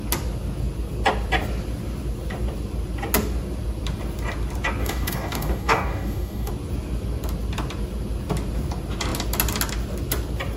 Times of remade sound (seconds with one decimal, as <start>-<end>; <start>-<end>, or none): 4.8-6.5